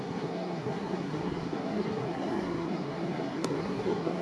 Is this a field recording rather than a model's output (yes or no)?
no